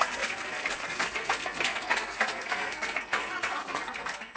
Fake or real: fake